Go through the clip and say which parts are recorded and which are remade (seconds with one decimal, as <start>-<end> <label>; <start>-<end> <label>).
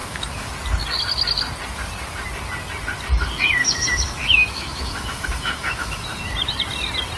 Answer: 0.0-0.5 remade; 0.5-3.6 recorded; 3.6-6.2 remade; 6.2-7.2 recorded